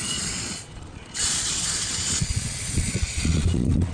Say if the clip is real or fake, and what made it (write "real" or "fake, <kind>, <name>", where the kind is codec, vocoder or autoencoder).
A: fake, vocoder, Vocos